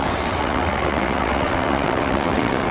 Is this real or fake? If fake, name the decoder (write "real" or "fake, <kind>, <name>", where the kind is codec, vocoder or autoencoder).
fake, vocoder, WaveNeXt